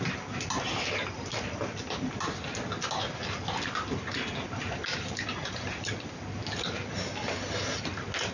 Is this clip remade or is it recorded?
recorded